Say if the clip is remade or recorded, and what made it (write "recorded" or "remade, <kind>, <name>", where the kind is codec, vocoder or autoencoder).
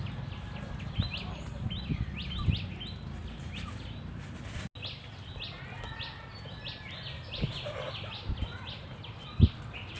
recorded